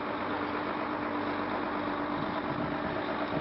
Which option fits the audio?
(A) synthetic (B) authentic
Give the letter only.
B